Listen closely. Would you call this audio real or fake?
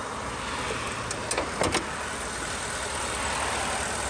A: real